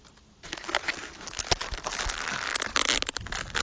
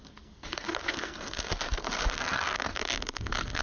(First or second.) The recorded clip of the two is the first